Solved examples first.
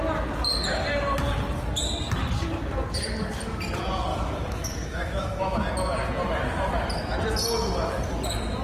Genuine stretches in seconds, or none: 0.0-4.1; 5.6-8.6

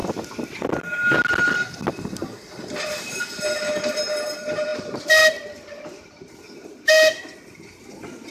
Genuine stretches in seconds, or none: 0.0-8.3

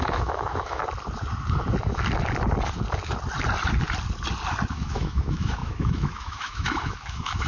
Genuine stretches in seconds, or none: 0.8-4.7

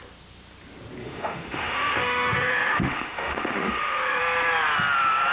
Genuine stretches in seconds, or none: 0.0-1.0; 4.2-5.3

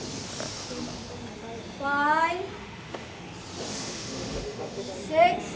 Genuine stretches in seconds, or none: 0.0-2.6; 3.2-3.7; 4.8-5.6

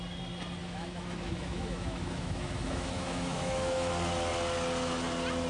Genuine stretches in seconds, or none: 0.0-0.6; 3.9-5.5

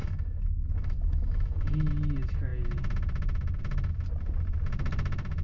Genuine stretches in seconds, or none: 1.9-5.4